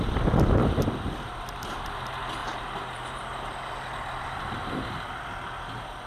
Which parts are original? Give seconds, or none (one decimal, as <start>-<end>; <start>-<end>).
0.0-0.6; 2.0-2.4; 3.9-6.1